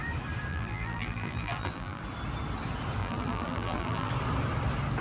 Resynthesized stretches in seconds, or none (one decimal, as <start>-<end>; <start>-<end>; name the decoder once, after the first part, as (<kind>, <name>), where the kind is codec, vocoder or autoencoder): 0.5-2.0 (vocoder, BigVGAN v2); 3.0-4.1